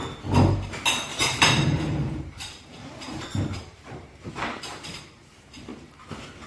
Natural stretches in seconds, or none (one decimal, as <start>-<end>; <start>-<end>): 0.0-1.1; 5.0-6.5